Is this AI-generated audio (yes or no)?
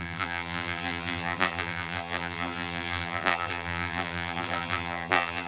yes